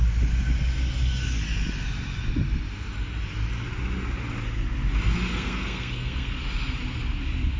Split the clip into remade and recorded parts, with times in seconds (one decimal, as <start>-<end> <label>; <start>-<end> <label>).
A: 0.0-5.3 recorded; 5.3-6.3 remade; 6.3-7.6 recorded